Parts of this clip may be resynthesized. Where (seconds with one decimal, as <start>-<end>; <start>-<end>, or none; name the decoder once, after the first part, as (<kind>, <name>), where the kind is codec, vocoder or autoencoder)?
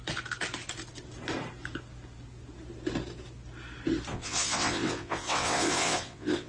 4.1-6.5 (vocoder, WaveNeXt)